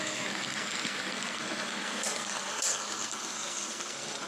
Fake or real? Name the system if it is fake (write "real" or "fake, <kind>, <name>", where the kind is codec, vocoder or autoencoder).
fake, codec, SNAC